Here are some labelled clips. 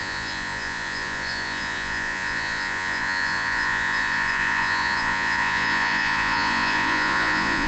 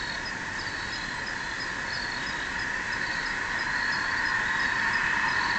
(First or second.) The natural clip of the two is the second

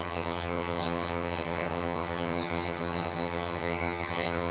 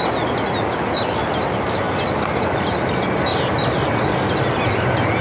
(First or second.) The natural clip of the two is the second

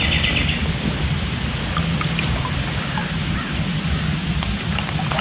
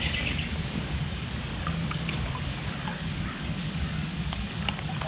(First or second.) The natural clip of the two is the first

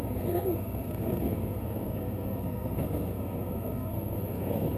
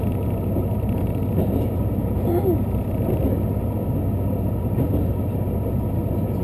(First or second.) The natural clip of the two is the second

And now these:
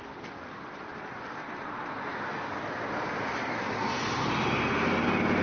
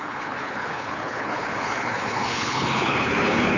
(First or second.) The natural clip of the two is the first